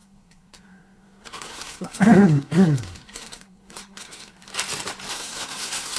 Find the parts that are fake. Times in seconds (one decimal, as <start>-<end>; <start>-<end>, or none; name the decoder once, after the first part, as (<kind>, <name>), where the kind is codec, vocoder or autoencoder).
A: 0.0-4.5 (codec, SNAC); 5.1-6.0